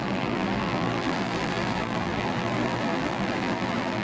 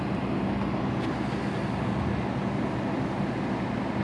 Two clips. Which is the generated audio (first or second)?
first